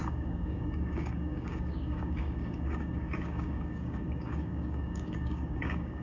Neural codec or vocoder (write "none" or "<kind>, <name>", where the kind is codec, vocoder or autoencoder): codec, DAC